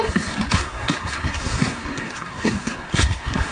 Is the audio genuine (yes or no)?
no